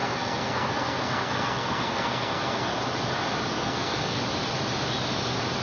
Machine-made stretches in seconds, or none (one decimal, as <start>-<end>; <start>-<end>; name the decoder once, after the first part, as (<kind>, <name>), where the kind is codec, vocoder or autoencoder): 0.0-2.8 (codec, SNAC); 3.5-4.2